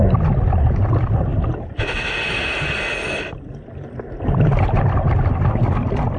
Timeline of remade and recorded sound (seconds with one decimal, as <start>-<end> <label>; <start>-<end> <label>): 0.0-6.2 recorded